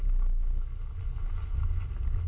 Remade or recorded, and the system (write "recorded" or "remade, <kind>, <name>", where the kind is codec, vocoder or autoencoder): recorded